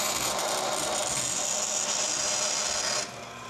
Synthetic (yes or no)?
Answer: no